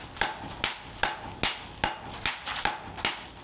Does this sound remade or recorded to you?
recorded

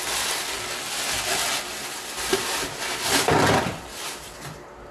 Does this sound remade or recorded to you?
recorded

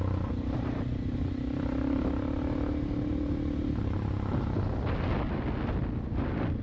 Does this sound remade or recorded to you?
recorded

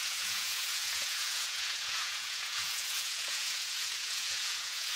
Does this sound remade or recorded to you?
remade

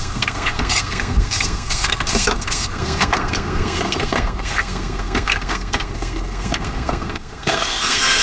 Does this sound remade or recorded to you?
remade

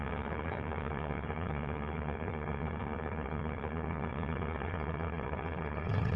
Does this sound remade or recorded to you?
remade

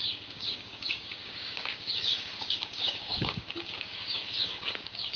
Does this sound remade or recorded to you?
remade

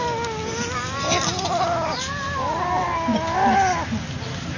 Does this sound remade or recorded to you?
recorded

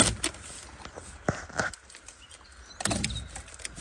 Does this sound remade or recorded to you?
recorded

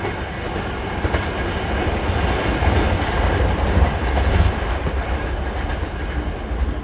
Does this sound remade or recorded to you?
recorded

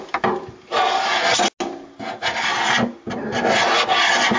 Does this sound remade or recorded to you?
recorded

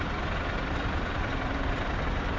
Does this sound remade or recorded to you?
remade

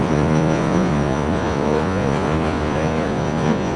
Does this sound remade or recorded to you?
remade